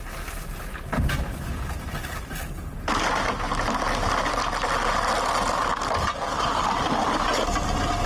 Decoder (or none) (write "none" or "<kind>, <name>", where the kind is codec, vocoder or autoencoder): none